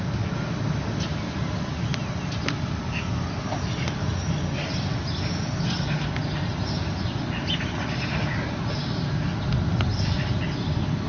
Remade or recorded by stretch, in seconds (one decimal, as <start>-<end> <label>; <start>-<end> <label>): 0.0-11.1 recorded